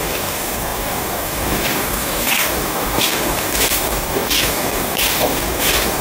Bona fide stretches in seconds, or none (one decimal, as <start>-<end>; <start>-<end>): none